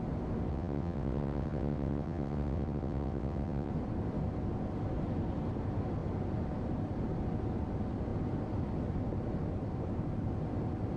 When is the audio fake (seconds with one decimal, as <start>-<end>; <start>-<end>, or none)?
0.5-3.7